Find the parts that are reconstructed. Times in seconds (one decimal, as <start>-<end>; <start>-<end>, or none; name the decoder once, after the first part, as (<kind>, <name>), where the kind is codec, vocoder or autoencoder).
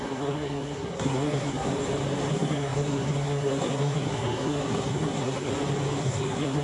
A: 0.0-1.7 (codec, SNAC); 2.3-5.5; 6.0-6.6